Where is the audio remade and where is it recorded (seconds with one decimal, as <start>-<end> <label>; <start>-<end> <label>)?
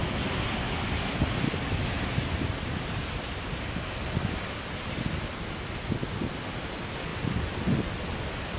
0.0-8.6 recorded